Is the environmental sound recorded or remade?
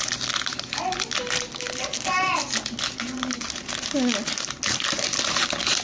recorded